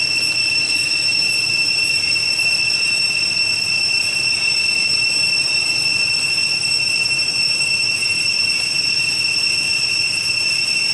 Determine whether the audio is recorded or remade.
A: recorded